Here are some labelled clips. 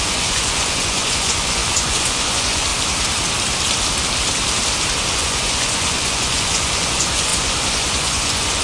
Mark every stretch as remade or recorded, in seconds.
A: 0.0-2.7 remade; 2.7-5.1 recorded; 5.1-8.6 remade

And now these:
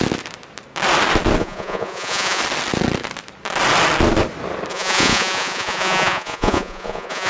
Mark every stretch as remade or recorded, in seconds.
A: 0.0-1.4 recorded; 1.4-2.4 remade; 2.4-4.7 recorded; 4.7-7.3 remade

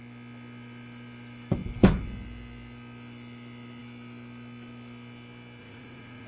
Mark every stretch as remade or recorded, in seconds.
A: 0.0-5.6 recorded; 5.6-6.3 remade

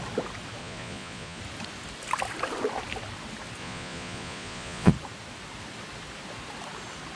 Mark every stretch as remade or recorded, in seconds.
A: 0.0-0.6 recorded; 0.6-1.4 remade; 1.4-3.6 recorded; 3.6-4.9 remade; 4.9-7.2 recorded

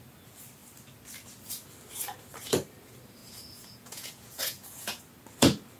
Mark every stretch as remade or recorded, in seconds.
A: 0.0-3.2 recorded; 3.2-5.0 remade; 5.0-5.8 recorded

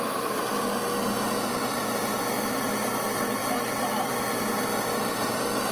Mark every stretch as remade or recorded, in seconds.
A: 0.0-5.7 recorded

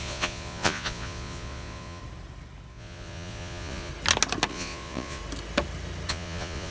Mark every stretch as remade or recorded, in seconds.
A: 0.0-2.0 remade; 2.0-2.7 recorded; 2.7-3.9 remade; 3.9-4.5 recorded; 4.5-5.2 remade; 5.2-6.1 recorded; 6.1-6.7 remade

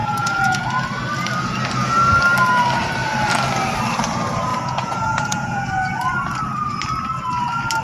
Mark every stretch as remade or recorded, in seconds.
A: 0.0-0.6 remade; 0.6-4.5 recorded; 4.5-5.7 remade; 5.7-7.8 recorded